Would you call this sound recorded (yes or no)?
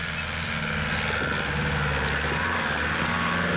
yes